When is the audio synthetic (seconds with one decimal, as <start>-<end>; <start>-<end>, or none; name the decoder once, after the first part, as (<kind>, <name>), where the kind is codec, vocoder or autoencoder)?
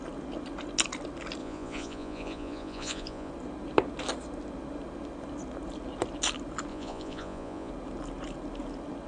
1.4-3.3 (vocoder, Vocos); 6.7-7.7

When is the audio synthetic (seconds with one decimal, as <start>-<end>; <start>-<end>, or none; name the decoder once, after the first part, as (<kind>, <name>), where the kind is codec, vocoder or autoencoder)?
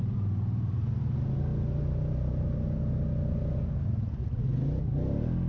none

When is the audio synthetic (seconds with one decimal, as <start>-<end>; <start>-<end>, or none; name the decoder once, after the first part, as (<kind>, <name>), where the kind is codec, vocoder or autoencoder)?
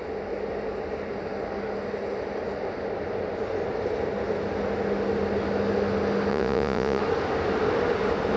6.3-7.0 (vocoder, Vocos)